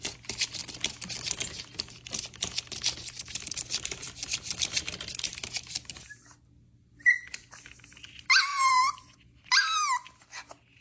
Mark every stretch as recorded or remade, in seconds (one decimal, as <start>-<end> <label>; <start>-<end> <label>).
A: 0.0-4.0 recorded; 4.0-5.3 remade; 5.3-8.5 recorded; 8.5-9.5 remade; 9.5-10.8 recorded